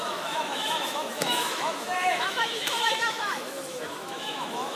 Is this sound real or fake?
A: fake